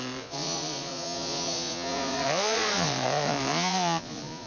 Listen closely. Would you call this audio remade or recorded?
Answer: remade